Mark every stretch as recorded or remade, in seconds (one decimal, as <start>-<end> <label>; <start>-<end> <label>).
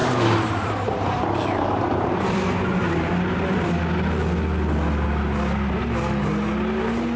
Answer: 0.0-3.7 remade; 3.7-7.2 recorded